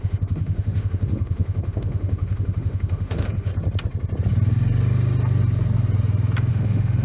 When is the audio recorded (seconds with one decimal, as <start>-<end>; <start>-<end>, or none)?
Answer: 3.5-6.5